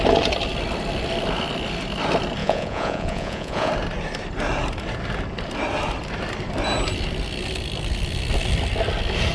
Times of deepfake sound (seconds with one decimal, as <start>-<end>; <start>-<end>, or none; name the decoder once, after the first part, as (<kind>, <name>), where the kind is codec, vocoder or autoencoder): 2.4-3.7 (vocoder, Vocos)